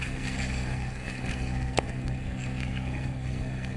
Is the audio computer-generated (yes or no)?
yes